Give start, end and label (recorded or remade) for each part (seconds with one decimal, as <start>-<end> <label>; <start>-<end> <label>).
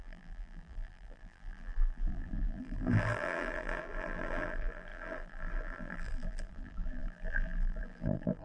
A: 0.0-8.4 remade